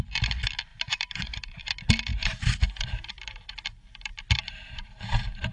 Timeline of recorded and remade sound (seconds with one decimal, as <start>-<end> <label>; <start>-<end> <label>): 0.0-0.7 recorded; 0.7-1.5 remade; 1.5-2.1 recorded; 2.1-5.5 remade